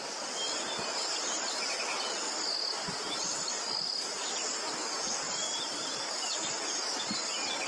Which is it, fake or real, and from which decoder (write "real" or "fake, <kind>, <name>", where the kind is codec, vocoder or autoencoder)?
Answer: real